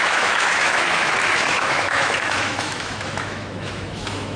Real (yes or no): no